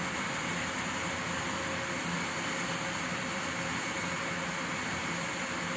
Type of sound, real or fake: real